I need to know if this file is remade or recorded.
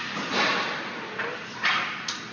recorded